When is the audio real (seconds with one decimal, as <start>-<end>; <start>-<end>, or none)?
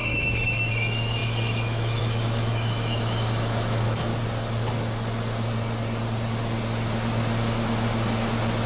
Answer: 4.1-8.7